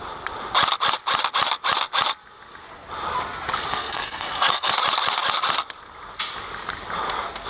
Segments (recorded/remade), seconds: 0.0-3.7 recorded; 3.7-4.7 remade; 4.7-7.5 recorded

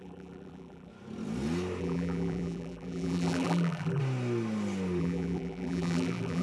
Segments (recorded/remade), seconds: 0.0-0.9 remade; 0.9-1.8 recorded; 1.8-4.0 remade; 4.0-5.0 recorded; 5.0-6.4 remade

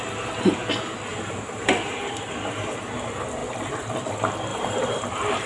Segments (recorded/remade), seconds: 0.0-1.1 recorded; 1.1-1.7 remade; 1.7-4.5 recorded; 4.5-5.5 remade

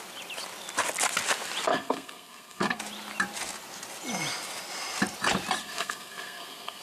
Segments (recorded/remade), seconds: 0.0-1.7 recorded; 1.7-2.8 remade; 2.8-5.6 recorded; 5.6-6.8 remade